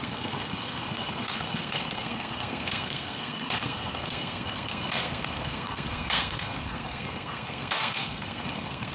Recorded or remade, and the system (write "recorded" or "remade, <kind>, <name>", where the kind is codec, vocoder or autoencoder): remade, codec, SNAC